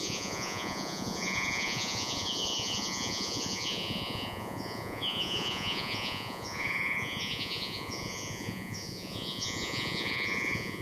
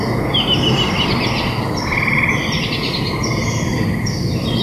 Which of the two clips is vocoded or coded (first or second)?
first